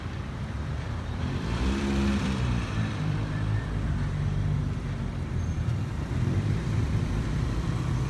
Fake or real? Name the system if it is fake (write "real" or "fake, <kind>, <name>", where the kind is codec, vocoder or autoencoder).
fake, vocoder, BigVGAN v2